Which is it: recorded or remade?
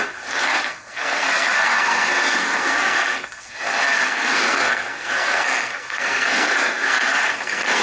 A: remade